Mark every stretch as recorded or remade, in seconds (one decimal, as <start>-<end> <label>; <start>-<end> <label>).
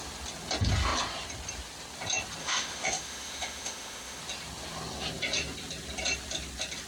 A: 0.0-2.4 recorded; 2.4-4.2 remade; 4.2-6.9 recorded